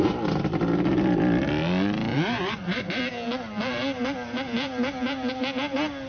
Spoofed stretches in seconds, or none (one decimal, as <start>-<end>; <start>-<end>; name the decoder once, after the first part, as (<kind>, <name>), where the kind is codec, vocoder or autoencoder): 2.1-3.0 (vocoder, Vocos)